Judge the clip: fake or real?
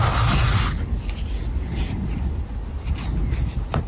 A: real